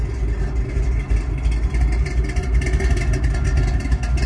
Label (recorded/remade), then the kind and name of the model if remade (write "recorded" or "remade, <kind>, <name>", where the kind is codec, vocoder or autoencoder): recorded